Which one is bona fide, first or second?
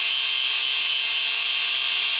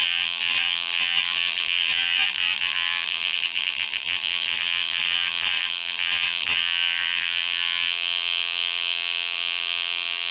first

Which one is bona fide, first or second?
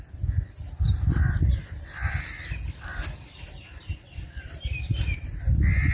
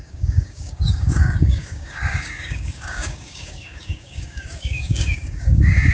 first